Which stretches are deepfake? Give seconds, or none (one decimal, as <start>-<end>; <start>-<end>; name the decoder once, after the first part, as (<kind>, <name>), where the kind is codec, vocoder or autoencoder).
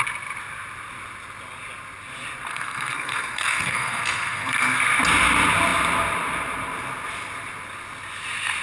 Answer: 2.5-4.8 (codec, SNAC)